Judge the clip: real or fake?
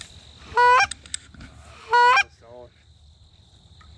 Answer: real